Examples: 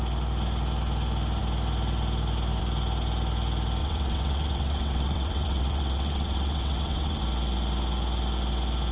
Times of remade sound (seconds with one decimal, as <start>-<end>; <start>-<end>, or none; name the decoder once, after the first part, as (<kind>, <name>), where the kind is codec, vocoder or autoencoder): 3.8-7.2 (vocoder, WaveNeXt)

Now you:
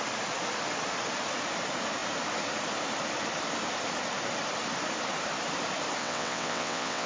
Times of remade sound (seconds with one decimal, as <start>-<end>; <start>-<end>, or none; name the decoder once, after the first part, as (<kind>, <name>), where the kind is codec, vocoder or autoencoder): 6.0-7.1 (vocoder, WaveNeXt)

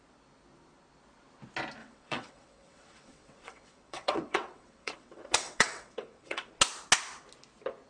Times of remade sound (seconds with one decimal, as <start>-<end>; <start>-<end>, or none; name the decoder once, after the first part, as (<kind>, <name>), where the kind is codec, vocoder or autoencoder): 1.8-6.5 (vocoder, WaveNeXt)